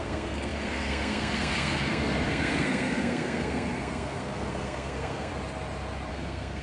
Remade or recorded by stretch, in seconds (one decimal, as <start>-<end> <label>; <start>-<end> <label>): 0.0-5.3 remade; 5.3-6.1 recorded; 6.1-6.6 remade